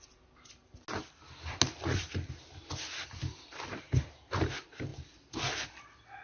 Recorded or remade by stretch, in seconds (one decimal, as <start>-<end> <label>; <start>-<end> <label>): 0.0-6.2 recorded